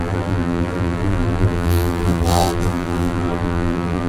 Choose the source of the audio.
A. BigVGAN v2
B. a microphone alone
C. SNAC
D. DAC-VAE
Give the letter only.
A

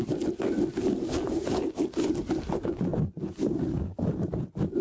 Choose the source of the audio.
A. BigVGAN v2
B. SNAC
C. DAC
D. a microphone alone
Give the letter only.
D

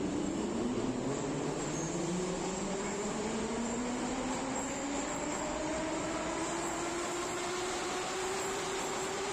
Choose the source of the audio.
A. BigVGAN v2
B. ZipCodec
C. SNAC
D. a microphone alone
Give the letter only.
D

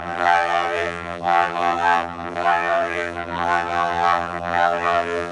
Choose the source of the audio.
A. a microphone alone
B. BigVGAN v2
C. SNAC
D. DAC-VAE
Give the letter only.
B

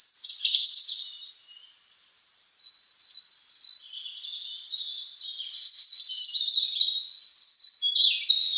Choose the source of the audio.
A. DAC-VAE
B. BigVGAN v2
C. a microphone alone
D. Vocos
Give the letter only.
B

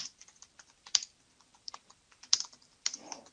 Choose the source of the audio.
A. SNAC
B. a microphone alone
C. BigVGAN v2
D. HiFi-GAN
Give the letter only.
C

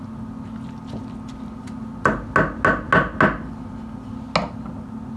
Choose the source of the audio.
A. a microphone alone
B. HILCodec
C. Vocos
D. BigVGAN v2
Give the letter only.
A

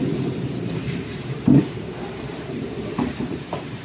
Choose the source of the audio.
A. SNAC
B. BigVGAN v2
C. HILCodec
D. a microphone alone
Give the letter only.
B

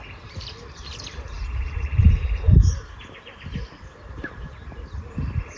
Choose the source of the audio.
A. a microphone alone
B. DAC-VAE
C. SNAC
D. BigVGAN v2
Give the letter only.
D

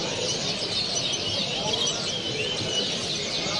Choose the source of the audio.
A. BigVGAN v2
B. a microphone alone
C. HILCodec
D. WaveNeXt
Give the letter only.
B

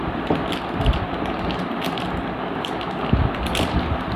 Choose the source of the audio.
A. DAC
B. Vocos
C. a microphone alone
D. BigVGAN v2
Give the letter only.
C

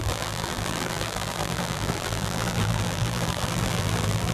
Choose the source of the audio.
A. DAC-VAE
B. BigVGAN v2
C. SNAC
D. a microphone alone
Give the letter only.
B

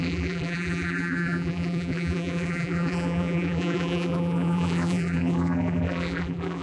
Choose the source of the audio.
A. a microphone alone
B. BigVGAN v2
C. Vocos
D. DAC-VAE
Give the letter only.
B